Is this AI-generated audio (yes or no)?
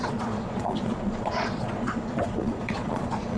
yes